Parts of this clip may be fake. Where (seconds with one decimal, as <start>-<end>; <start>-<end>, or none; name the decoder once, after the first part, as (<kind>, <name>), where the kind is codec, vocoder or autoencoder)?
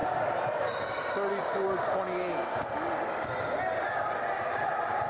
none